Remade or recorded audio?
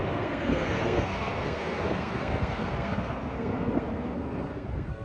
remade